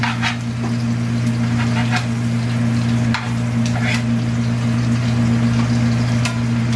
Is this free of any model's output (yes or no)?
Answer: yes